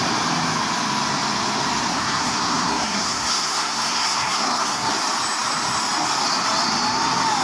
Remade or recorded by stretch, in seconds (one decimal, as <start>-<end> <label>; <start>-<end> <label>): 0.0-1.9 recorded; 1.9-4.9 remade; 4.9-7.4 recorded